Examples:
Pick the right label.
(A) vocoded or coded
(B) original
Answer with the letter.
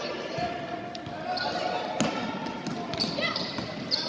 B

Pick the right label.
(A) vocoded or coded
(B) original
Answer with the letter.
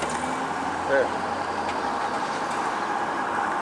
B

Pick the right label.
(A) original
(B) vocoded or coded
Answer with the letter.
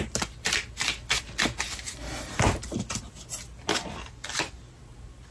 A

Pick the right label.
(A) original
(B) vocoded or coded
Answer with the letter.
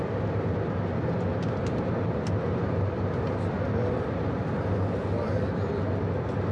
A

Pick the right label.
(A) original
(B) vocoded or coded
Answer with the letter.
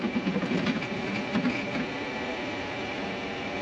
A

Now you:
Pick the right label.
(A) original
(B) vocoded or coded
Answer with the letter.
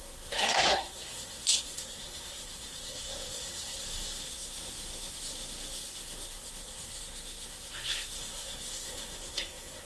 B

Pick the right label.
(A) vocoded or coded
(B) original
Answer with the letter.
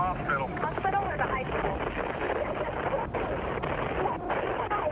B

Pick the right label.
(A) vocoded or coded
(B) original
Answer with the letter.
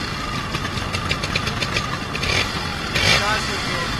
B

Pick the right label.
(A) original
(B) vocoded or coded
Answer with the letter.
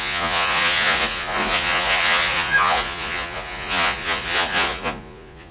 B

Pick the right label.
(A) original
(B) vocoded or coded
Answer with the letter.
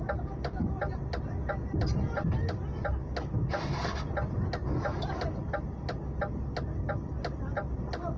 A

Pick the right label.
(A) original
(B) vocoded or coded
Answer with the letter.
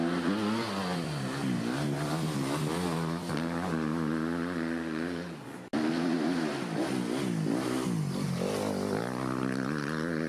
A